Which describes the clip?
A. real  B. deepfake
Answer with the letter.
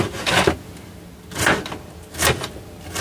A